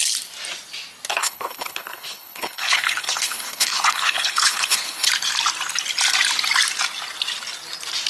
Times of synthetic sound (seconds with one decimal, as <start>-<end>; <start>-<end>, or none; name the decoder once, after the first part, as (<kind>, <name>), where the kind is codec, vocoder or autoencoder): 1.1-5.1 (codec, HILCodec)